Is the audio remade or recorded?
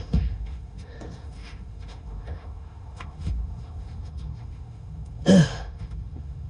remade